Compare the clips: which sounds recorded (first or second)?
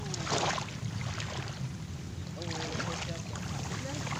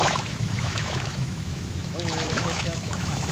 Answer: first